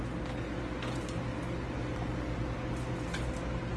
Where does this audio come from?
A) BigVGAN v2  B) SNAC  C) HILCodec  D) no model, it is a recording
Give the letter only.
D